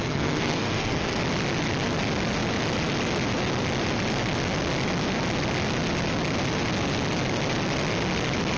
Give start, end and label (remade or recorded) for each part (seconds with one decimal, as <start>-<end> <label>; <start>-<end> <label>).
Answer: 0.0-1.2 remade; 1.2-8.6 recorded